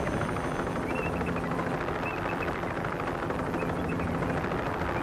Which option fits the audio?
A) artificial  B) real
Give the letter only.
B